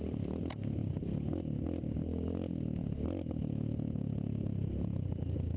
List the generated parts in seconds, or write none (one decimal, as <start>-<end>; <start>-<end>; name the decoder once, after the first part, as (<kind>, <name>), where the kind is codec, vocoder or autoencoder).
none